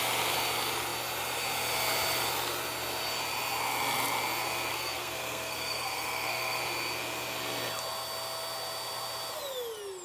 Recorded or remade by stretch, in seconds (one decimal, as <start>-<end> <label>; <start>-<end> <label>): 0.0-4.7 recorded; 4.7-6.6 remade; 6.6-10.0 recorded